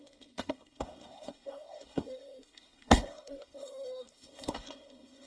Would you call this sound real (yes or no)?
no